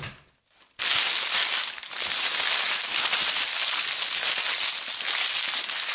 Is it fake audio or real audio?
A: real